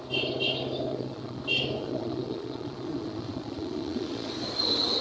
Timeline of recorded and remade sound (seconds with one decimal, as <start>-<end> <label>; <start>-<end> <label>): 0.0-0.9 recorded; 0.9-1.4 remade; 1.4-1.8 recorded; 1.8-4.3 remade; 4.3-5.0 recorded